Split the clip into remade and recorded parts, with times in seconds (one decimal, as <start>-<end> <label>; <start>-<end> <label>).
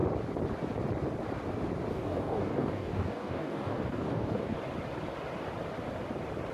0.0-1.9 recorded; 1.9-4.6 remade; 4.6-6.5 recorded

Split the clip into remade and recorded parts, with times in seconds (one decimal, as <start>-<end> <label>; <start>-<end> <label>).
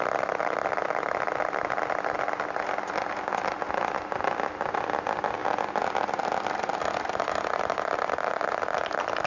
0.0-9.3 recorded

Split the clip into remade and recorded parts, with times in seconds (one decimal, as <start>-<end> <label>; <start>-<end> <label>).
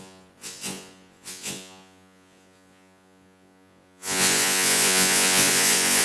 0.0-6.0 remade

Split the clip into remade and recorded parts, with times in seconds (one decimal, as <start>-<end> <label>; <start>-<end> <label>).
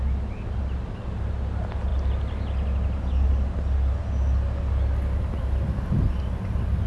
0.0-6.9 recorded